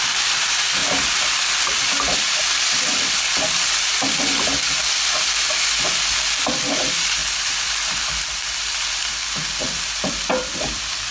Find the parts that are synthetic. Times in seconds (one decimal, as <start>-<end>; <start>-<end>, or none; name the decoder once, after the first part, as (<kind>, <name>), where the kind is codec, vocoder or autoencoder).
0.0-11.1 (vocoder, BigVGAN v2)